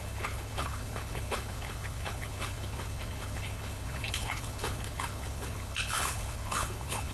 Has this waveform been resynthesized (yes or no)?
yes